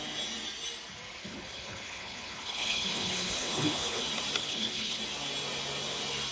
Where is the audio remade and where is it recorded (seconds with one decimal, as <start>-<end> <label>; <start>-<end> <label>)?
0.0-1.2 recorded; 1.2-4.0 remade; 4.0-4.4 recorded; 4.4-5.0 remade; 5.0-6.3 recorded